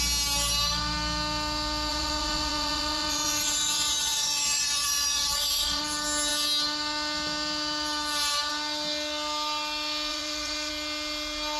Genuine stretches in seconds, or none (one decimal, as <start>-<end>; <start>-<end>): 0.0-1.9; 5.8-10.1; 10.7-11.6